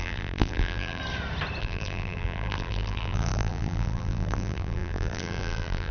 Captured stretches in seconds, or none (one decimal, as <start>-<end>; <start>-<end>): 1.0-1.6